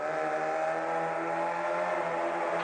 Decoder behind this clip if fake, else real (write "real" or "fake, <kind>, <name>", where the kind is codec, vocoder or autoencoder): real